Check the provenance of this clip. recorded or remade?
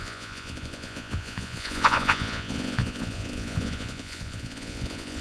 remade